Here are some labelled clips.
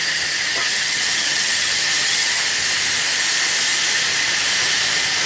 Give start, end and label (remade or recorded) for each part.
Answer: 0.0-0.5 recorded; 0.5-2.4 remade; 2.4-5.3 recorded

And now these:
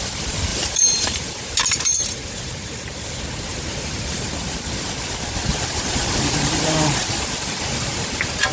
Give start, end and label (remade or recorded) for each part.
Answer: 0.0-0.5 recorded; 0.5-2.9 remade; 2.9-3.5 recorded; 3.5-4.3 remade; 4.3-5.5 recorded; 5.5-7.1 remade; 7.1-8.5 recorded